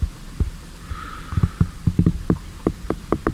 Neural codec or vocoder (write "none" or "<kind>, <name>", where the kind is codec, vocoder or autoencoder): none